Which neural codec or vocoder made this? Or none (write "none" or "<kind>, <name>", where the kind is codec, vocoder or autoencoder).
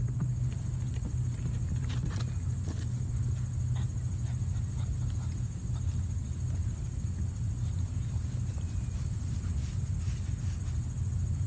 none